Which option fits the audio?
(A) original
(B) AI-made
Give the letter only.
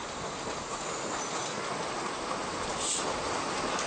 A